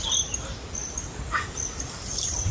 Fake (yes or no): no